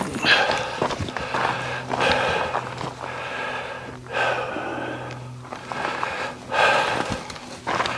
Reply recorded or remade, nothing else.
recorded